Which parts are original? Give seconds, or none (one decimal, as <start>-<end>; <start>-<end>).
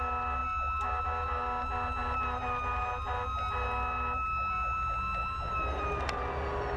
0.0-6.8